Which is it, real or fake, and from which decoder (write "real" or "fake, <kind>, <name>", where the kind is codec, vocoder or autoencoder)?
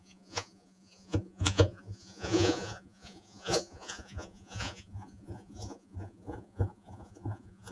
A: fake, vocoder, Vocos